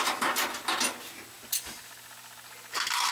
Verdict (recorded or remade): recorded